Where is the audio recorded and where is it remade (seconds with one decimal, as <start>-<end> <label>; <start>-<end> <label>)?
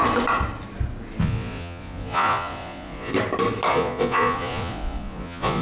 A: 0.0-1.2 recorded; 1.2-3.1 remade; 3.1-3.7 recorded; 3.7-5.6 remade